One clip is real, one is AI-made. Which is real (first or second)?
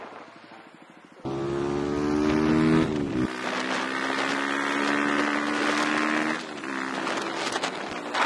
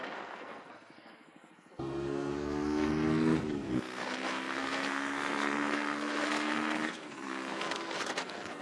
first